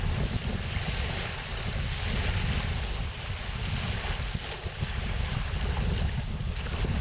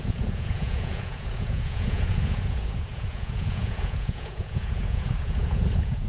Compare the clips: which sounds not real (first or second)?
second